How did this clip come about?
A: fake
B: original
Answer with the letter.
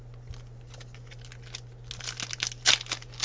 B